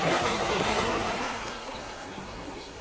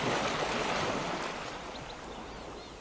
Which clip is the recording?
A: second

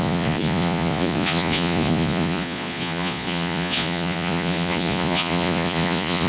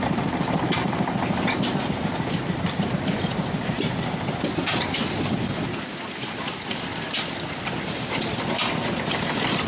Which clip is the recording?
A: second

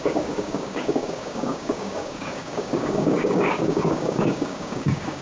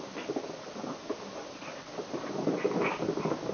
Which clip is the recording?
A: second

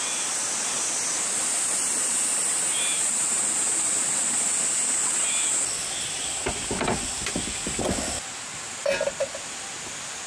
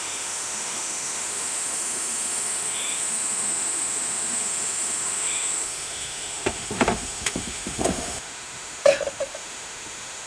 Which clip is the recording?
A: first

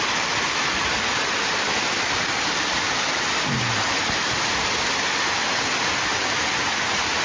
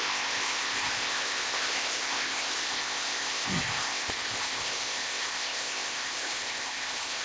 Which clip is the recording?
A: first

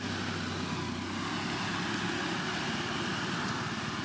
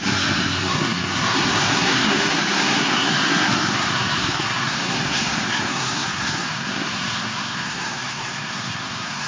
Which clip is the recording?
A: first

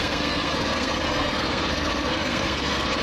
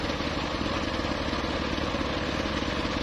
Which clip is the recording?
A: second